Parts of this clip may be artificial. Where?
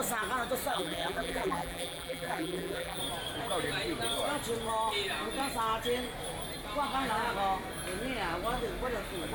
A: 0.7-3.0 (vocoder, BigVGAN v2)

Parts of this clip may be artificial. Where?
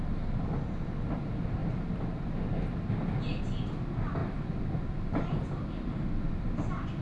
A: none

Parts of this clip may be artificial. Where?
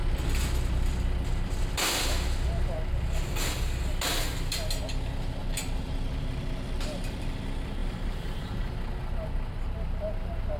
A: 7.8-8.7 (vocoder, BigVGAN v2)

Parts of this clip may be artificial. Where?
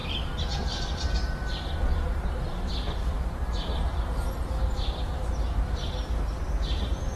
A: none